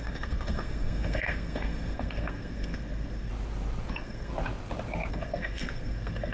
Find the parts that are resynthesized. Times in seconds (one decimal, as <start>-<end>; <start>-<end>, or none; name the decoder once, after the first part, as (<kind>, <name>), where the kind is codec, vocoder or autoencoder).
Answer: 0.0-3.3 (codec, SNAC); 3.9-4.3; 5.1-6.3